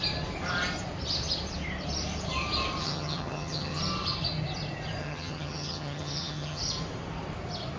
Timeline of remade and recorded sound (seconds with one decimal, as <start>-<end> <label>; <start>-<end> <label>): 0.0-2.8 recorded; 2.8-3.8 remade; 3.8-5.0 recorded; 5.0-6.6 remade; 6.6-7.8 recorded